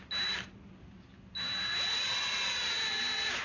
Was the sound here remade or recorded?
recorded